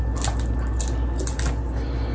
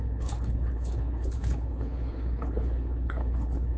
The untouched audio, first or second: first